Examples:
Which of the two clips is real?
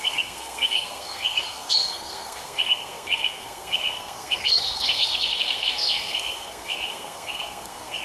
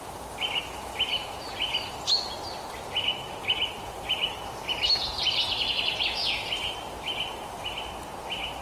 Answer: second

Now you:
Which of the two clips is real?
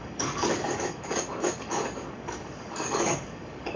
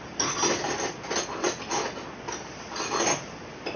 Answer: second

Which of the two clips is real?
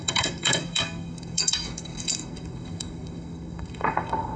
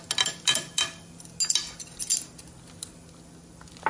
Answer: second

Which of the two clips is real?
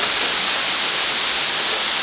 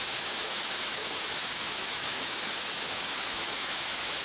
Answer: first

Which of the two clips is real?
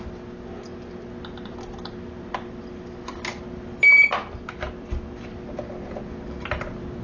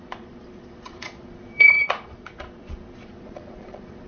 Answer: first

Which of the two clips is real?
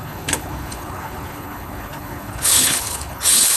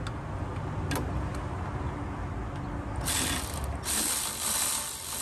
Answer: second